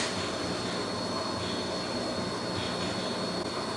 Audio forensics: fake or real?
real